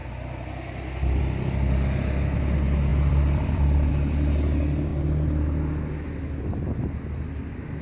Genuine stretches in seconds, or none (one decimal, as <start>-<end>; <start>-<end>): 0.0-2.9; 3.9-7.8